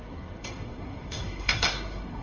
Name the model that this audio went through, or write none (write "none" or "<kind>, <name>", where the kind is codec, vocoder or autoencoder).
codec, SNAC